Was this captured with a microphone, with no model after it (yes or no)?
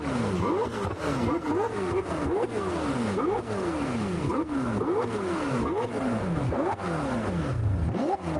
no